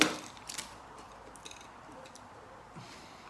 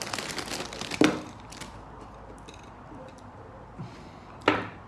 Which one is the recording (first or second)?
second